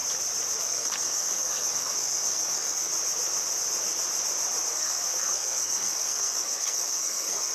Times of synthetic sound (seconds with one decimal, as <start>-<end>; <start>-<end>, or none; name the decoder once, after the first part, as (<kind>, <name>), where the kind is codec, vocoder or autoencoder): 0.6-2.9 (codec, SNAC); 4.7-7.5